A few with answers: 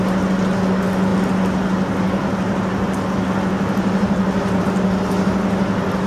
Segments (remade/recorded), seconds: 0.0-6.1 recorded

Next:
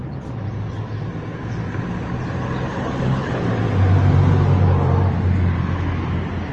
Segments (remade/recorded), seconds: 0.0-2.7 recorded; 2.7-3.5 remade; 3.5-6.5 recorded

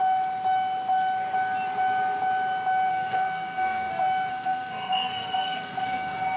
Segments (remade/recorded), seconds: 0.0-2.9 recorded; 2.9-3.9 remade; 3.9-4.3 recorded; 4.3-6.4 remade

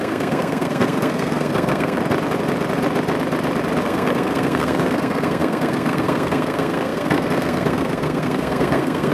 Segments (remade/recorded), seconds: 0.0-2.0 remade; 2.0-3.8 recorded; 3.8-9.1 remade

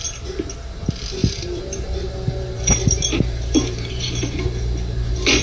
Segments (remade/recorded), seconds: 0.0-1.2 recorded; 1.2-4.4 remade; 4.4-5.4 recorded

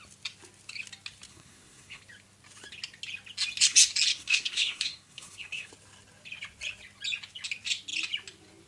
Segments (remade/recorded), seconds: 0.0-1.3 recorded; 1.3-2.0 remade; 2.0-4.1 recorded; 4.1-5.7 remade; 5.7-8.7 recorded

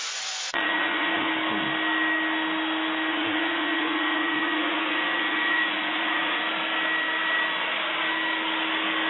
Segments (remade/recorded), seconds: 0.0-1.3 remade; 1.3-3.1 recorded; 3.1-6.4 remade; 6.4-9.1 recorded

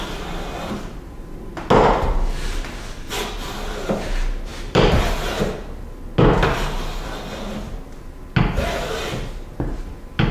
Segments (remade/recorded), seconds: 0.0-4.5 recorded; 4.5-5.0 remade; 5.0-10.3 recorded